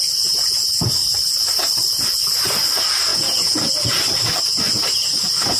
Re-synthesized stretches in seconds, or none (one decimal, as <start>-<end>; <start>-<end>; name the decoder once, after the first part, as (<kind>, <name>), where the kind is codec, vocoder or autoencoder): 3.1-3.7 (vocoder, Vocos)

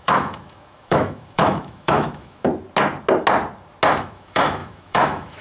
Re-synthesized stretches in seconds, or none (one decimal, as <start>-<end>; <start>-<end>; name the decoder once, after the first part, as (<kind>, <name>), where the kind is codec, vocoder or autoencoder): 0.0-2.5 (autoencoder, DAC-VAE); 4.0-5.4

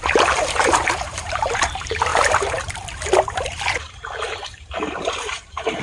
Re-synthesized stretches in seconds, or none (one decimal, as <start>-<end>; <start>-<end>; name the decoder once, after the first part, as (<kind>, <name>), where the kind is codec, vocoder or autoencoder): 0.0-5.8 (vocoder, BigVGAN v2)

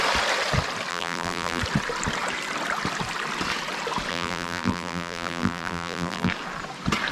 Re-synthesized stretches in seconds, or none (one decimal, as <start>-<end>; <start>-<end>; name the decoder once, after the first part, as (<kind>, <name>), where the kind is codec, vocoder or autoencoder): 0.9-1.6 (vocoder, BigVGAN v2); 4.1-6.3

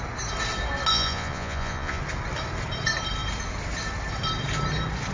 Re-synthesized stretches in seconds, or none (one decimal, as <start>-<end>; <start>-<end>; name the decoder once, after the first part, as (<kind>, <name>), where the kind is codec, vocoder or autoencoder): 0.9-2.0 (vocoder, Vocos)

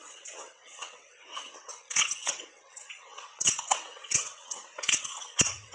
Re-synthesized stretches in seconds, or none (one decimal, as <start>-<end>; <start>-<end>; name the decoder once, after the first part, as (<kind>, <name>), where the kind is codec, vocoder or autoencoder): 0.0-5.7 (vocoder, WaveNeXt)